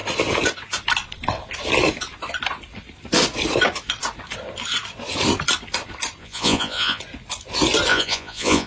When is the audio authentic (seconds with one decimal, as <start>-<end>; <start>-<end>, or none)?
0.0-6.2; 7.0-7.9